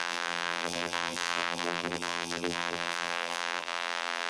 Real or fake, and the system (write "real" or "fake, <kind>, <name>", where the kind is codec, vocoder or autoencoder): fake, vocoder, BigVGAN v2